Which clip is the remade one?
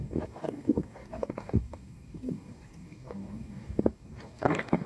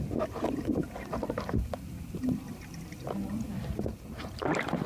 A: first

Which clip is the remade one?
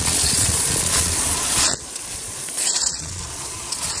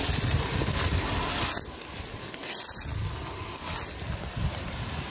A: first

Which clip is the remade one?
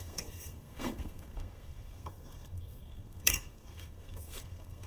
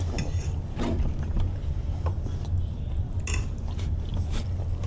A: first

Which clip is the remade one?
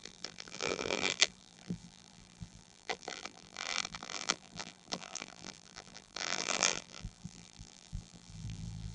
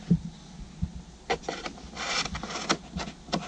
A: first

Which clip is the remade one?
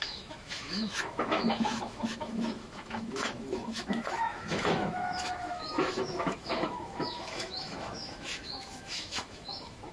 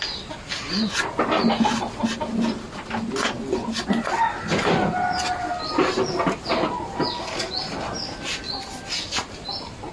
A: first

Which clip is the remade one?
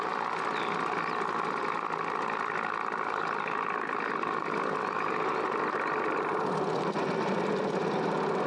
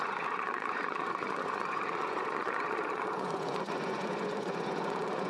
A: second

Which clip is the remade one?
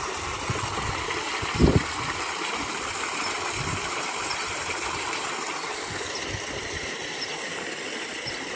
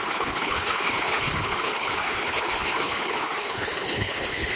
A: second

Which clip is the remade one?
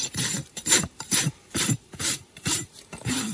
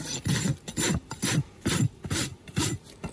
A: first